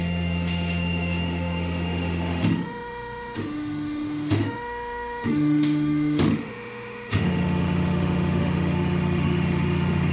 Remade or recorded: remade